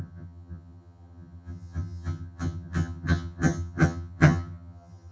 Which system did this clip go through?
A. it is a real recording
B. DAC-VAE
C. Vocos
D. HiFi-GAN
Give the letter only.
D